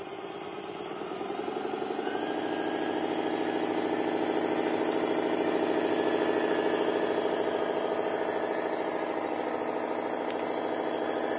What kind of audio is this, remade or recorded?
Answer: recorded